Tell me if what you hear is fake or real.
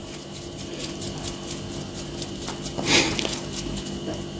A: real